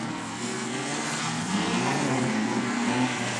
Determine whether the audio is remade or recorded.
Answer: remade